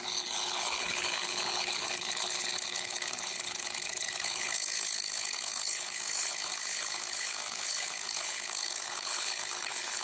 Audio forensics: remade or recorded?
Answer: remade